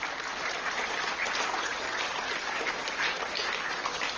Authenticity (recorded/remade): remade